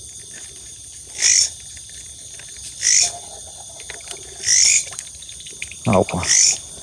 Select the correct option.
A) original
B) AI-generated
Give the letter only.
A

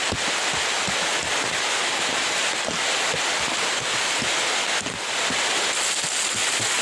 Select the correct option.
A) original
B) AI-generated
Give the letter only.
A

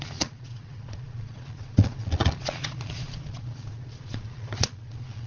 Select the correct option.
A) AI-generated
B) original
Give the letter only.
A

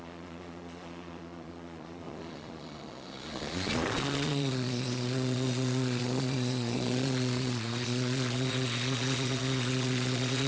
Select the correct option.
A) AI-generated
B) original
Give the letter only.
A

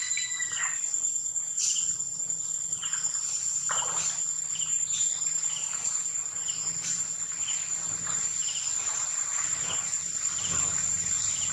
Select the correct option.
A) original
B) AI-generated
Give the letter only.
A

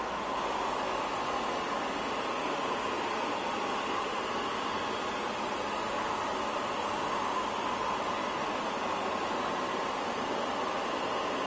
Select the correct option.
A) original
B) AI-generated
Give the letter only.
A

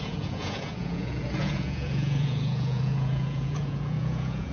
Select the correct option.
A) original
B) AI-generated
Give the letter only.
B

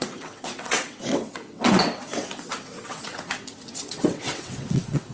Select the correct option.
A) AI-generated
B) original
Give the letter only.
A